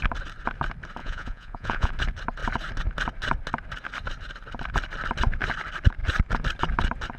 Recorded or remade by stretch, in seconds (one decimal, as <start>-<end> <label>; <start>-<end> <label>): 0.0-1.0 recorded; 1.0-1.9 remade; 1.9-7.2 recorded